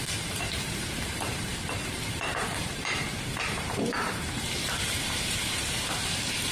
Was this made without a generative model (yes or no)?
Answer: no